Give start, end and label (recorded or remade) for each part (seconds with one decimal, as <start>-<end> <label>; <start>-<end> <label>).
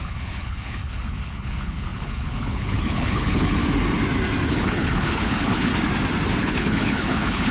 0.0-3.6 remade; 3.6-4.5 recorded; 4.5-5.7 remade; 5.7-6.4 recorded; 6.4-7.5 remade